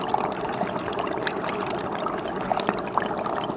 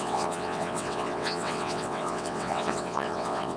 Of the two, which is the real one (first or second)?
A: first